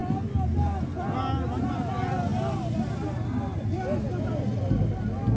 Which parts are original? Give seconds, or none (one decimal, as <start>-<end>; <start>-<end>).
0.0-5.4